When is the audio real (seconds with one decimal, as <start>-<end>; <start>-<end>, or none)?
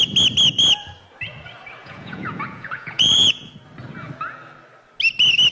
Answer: 0.0-1.8; 3.5-5.5